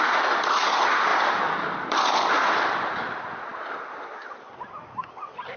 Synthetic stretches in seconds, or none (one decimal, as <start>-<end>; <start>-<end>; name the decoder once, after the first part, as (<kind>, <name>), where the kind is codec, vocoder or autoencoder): none